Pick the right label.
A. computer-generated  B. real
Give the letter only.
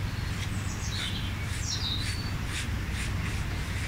B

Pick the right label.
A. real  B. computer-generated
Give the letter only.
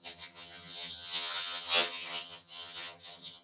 B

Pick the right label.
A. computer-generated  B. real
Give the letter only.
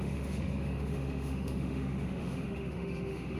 A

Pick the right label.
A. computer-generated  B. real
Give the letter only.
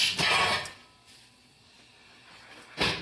B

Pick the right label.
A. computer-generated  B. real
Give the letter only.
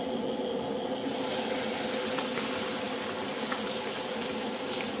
B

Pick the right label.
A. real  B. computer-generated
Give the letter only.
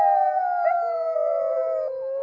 A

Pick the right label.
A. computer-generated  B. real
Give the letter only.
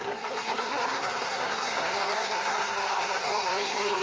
A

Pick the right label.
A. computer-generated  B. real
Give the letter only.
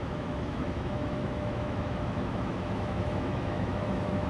A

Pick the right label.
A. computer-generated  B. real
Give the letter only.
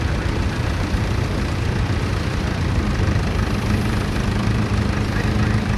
A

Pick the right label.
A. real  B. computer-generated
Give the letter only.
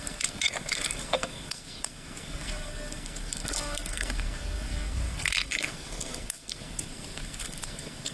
B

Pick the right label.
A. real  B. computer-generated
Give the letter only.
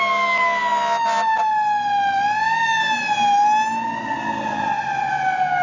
A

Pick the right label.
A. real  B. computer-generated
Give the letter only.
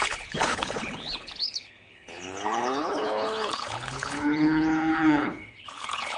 B